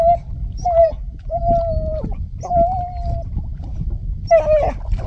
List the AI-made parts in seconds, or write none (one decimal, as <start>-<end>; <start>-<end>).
0.8-1.4